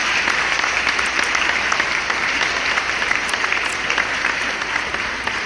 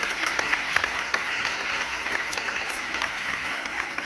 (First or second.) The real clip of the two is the first